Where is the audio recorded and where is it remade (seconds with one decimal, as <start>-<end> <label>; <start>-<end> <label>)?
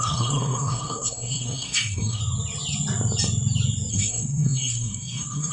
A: 0.0-2.2 remade; 2.2-3.9 recorded; 3.9-5.5 remade